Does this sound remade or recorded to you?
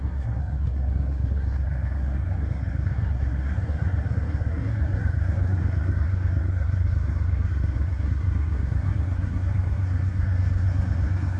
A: remade